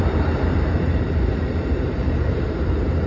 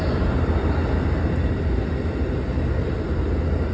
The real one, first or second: second